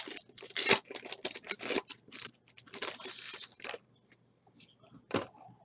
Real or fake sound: fake